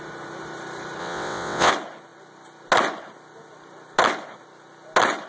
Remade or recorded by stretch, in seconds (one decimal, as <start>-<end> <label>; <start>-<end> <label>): 0.0-1.0 recorded; 1.0-1.7 remade; 1.7-5.3 recorded